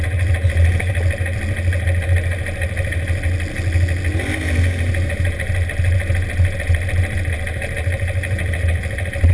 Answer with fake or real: real